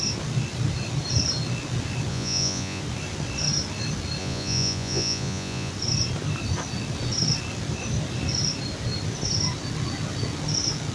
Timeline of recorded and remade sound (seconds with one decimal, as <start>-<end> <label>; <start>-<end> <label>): 0.0-2.1 recorded; 2.1-2.8 remade; 2.8-4.2 recorded; 4.2-5.7 remade; 5.7-10.9 recorded